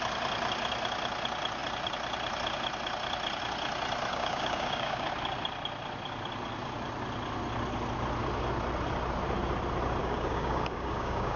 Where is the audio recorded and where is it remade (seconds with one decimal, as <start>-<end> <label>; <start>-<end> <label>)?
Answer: 0.0-4.1 recorded; 4.1-5.1 remade; 5.1-10.0 recorded; 10.0-11.4 remade